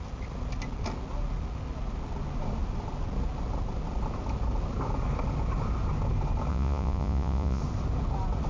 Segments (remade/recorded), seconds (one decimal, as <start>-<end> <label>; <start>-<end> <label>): 0.0-6.5 recorded; 6.5-7.6 remade; 7.6-8.5 recorded